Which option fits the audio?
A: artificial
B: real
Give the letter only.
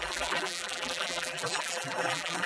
A